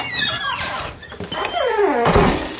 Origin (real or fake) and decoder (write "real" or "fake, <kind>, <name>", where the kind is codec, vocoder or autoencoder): fake, vocoder, BigVGAN v2